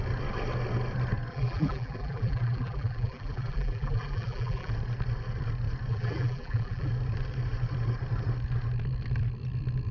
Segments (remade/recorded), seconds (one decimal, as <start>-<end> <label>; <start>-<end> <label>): 0.0-1.3 recorded; 1.3-4.7 remade; 4.7-5.9 recorded; 5.9-6.9 remade; 6.9-9.9 recorded